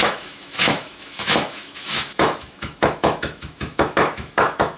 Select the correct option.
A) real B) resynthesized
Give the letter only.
B